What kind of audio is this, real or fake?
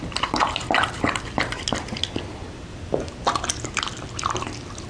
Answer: real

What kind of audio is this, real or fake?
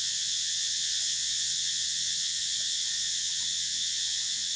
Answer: fake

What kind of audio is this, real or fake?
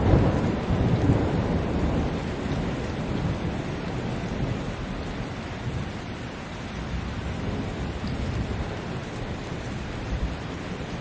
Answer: real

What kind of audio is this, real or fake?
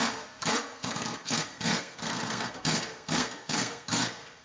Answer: fake